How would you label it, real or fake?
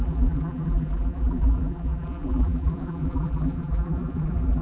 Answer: fake